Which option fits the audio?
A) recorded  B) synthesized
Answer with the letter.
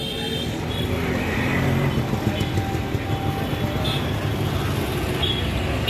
A